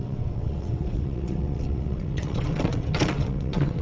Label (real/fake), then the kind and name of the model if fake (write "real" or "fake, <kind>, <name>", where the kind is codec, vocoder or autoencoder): fake, vocoder, WaveNeXt